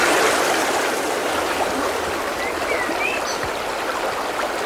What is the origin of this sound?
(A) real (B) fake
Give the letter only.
A